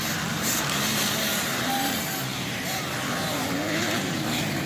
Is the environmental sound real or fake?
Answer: fake